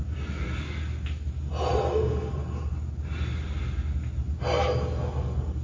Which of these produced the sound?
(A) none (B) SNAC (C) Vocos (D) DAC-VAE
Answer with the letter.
A